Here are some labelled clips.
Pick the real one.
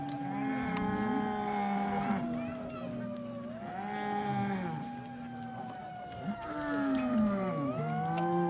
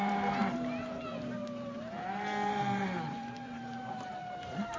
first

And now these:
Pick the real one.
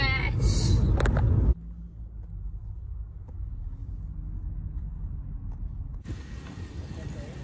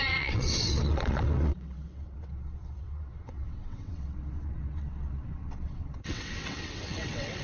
first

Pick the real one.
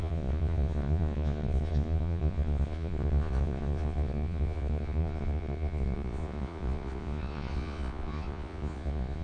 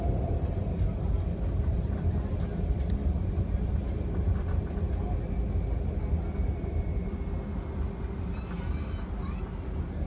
second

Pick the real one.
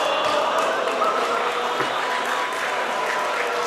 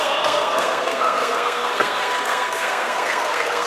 first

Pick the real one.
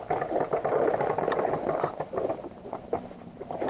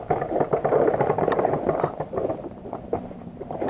first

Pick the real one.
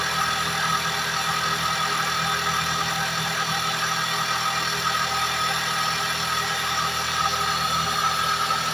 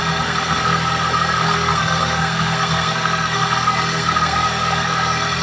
first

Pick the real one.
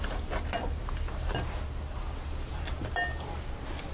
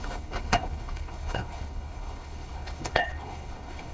first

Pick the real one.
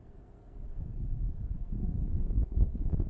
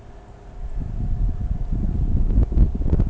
second